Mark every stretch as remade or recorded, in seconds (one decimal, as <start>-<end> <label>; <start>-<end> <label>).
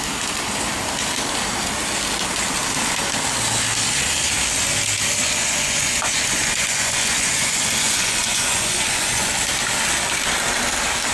0.0-5.2 recorded; 5.2-9.3 remade; 9.3-11.1 recorded